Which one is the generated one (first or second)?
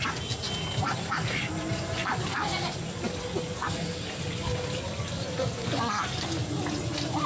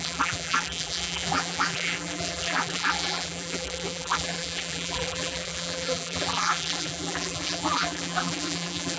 second